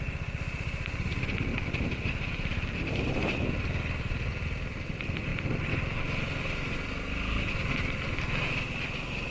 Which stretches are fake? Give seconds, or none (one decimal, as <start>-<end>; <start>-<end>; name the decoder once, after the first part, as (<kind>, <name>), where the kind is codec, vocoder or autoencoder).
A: none